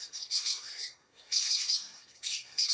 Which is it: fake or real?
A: fake